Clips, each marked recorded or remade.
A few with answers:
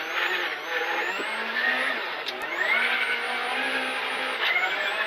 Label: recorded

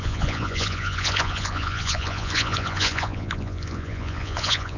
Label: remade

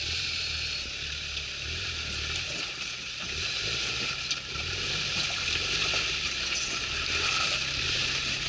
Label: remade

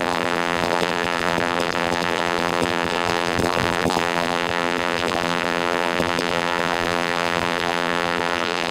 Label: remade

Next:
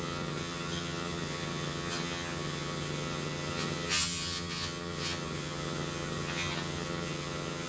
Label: remade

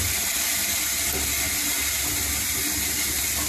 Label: recorded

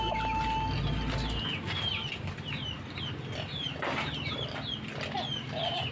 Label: recorded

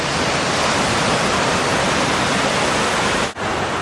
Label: recorded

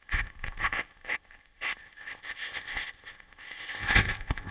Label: remade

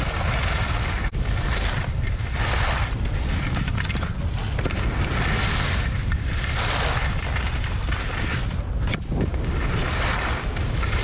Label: recorded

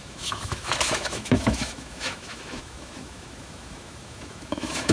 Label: remade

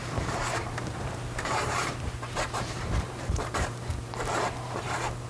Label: remade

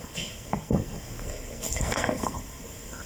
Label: remade